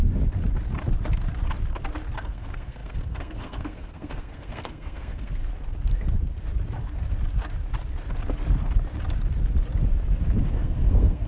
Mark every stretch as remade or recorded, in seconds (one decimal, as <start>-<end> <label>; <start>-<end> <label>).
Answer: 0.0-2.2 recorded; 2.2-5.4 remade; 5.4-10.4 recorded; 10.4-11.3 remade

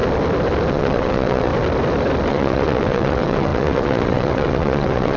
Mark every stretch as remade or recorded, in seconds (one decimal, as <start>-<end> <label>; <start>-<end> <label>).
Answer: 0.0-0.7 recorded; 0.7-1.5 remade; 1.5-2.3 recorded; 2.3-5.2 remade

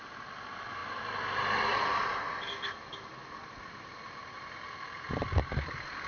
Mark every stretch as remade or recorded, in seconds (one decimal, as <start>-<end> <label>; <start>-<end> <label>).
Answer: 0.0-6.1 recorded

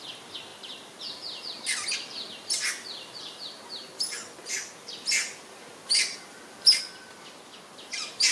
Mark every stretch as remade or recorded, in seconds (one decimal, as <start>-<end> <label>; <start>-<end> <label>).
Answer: 0.0-8.3 recorded